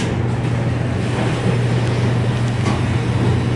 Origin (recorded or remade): recorded